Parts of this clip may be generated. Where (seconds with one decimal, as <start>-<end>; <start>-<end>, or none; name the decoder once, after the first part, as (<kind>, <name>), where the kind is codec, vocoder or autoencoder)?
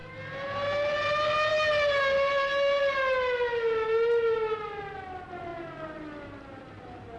none